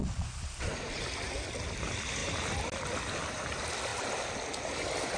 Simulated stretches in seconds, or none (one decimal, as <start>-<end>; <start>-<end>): 0.0-1.0